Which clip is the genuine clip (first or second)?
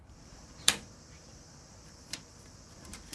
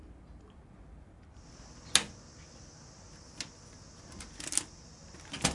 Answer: second